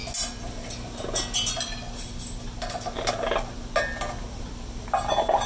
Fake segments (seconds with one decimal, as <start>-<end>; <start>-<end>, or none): none

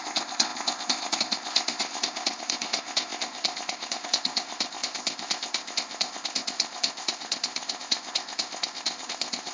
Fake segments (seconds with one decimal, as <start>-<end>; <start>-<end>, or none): 0.0-9.5

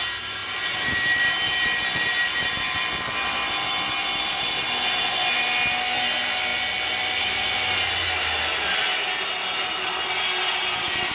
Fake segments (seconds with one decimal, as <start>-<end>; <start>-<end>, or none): none

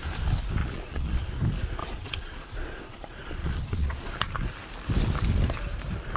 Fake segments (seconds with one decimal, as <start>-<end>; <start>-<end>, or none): 0.6-1.2; 1.8-4.3